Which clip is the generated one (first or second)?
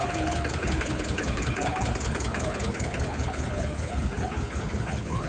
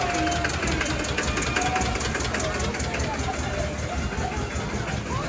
first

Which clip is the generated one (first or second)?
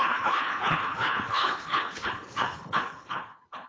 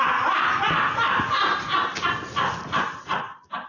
first